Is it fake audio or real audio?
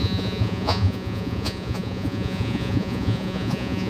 fake